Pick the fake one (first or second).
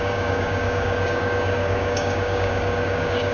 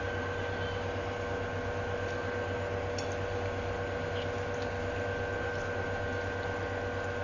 first